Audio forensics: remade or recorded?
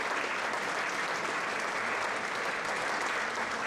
recorded